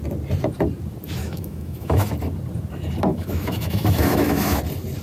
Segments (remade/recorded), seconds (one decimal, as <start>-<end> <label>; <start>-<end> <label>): 0.0-1.2 recorded; 1.2-2.1 remade; 2.1-3.1 recorded; 3.1-4.6 remade; 4.6-5.0 recorded